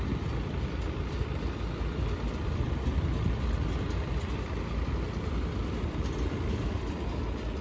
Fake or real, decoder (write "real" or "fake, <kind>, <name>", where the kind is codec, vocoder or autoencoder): real